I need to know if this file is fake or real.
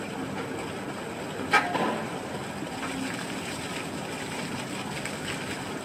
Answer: real